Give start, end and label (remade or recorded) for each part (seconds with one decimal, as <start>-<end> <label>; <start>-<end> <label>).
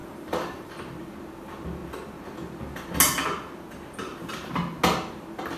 0.0-0.7 remade; 0.7-5.6 recorded